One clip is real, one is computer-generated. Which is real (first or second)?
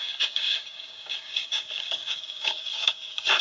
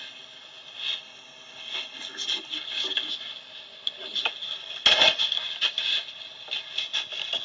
second